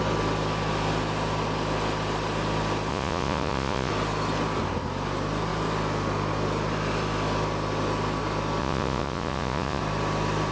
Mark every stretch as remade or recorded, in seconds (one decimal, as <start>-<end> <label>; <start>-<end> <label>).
0.0-2.9 recorded; 2.9-3.9 remade; 3.9-8.6 recorded; 8.6-9.8 remade; 9.8-10.5 recorded